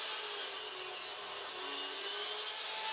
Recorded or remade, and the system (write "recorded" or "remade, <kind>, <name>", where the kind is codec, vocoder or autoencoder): recorded